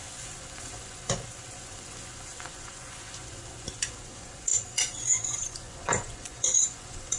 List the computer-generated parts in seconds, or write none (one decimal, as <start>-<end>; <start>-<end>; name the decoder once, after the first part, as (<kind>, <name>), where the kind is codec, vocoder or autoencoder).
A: 0.0-7.2 (vocoder, Vocos)